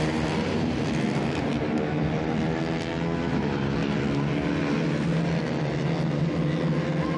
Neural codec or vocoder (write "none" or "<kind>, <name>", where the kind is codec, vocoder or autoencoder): none